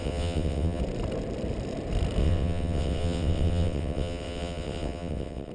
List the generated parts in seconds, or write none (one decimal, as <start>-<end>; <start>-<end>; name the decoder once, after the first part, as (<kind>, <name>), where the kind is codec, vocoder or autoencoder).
0.0-0.8 (vocoder, WaveNeXt); 2.2-5.5